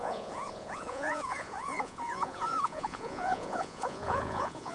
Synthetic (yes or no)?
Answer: yes